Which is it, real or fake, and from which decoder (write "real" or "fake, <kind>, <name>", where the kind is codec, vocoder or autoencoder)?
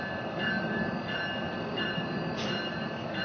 real